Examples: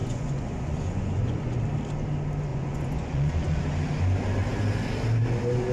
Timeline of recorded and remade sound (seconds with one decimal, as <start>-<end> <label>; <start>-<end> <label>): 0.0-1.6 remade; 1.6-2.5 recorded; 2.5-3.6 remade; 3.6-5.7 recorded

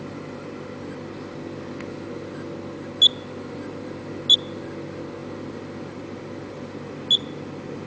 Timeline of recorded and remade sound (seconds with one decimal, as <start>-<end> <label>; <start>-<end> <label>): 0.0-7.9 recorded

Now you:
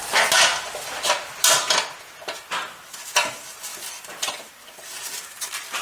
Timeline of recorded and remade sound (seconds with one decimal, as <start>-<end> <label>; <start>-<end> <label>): 0.0-3.7 recorded; 3.7-4.5 remade; 4.5-5.8 recorded